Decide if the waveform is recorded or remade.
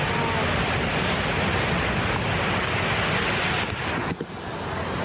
recorded